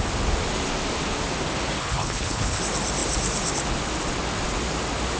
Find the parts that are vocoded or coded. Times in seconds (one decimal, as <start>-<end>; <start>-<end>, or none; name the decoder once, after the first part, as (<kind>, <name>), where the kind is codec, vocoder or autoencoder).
1.8-2.6 (codec, HILCodec)